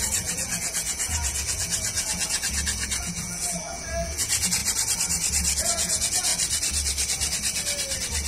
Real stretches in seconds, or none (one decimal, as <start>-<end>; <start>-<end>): 4.6-5.6; 6.3-8.3